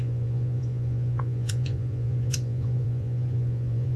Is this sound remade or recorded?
remade